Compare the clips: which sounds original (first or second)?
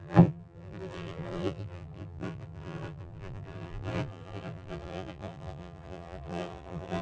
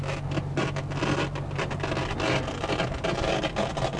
second